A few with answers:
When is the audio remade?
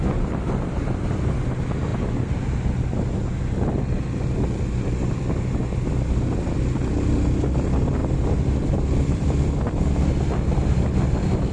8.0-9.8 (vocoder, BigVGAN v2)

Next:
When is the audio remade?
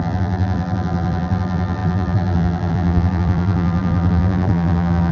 0.0-5.1 (vocoder, BigVGAN v2)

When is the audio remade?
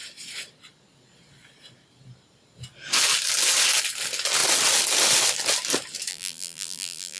6.1-7.2 (vocoder, BigVGAN v2)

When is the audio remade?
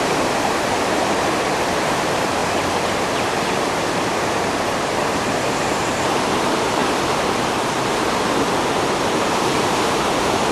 0.0-2.4 (vocoder, BigVGAN v2); 2.9-6.8; 9.0-10.5